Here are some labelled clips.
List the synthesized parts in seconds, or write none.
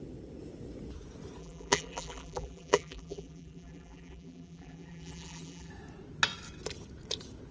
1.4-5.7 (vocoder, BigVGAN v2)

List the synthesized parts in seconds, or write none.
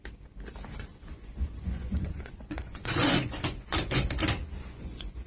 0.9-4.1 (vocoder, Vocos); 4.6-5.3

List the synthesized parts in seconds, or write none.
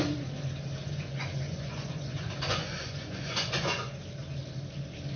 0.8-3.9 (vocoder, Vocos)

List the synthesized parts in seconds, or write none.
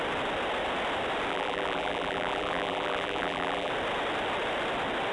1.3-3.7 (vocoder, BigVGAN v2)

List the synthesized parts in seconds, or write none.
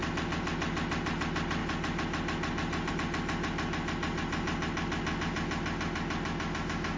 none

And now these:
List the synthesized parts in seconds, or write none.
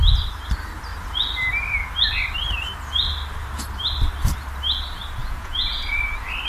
5.2-5.9 (vocoder, Vocos)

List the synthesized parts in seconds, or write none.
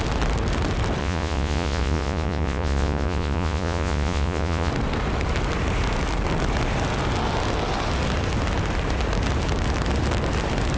1.0-4.7 (vocoder, Vocos)